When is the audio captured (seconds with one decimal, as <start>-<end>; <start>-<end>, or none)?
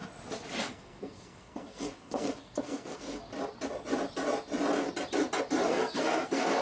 0.0-0.6; 3.2-5.7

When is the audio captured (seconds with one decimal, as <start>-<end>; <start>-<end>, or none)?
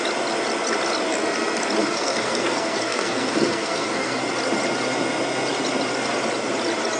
0.0-1.8; 4.2-7.0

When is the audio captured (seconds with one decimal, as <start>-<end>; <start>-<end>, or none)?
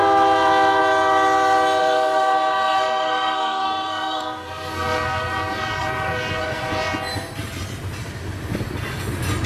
0.0-1.8; 6.6-9.5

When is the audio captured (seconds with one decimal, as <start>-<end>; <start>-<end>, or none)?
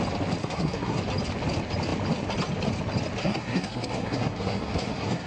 0.0-0.4; 1.0-3.2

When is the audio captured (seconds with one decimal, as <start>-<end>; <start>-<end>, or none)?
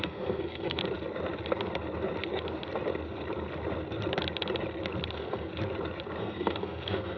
0.8-5.1; 5.5-6.2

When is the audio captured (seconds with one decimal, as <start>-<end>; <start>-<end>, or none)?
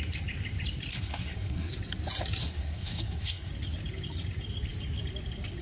0.0-0.9; 1.7-2.4; 3.5-5.6